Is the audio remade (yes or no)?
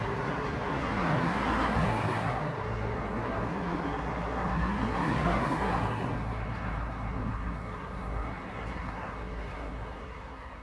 yes